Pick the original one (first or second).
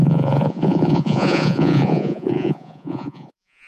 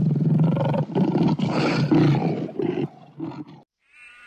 second